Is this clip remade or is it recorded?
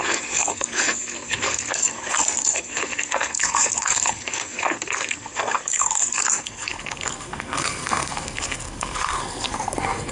remade